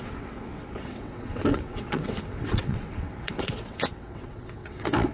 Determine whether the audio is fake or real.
fake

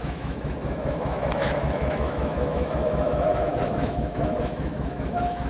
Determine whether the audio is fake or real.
fake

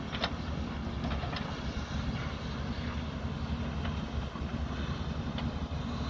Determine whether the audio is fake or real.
real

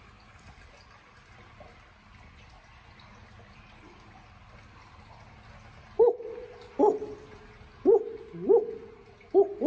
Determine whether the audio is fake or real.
real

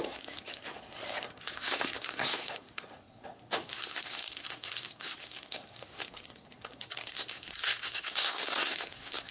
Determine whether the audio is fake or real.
fake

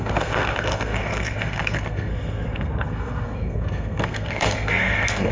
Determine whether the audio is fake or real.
fake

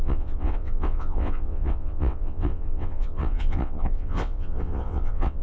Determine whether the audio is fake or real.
fake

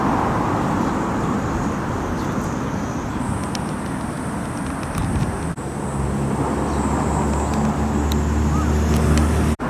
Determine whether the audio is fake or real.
real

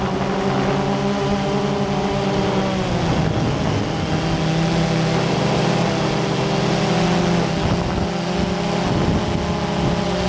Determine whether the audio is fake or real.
real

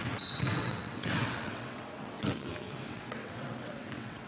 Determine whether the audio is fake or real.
fake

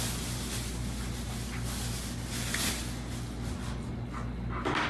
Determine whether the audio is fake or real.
real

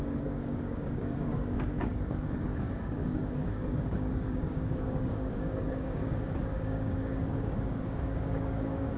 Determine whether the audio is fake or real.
fake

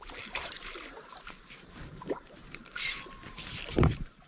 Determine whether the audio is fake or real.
fake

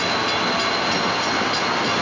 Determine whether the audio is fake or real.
real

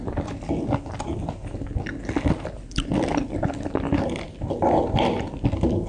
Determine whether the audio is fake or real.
real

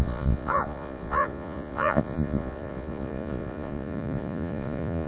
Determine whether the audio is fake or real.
fake